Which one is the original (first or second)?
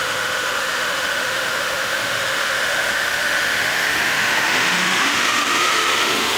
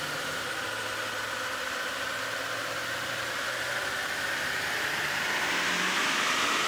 second